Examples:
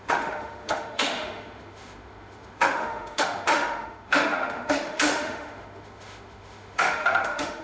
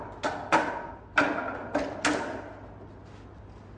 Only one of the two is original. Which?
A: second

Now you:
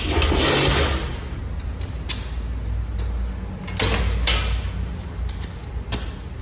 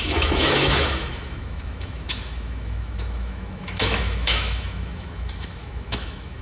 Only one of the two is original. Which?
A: first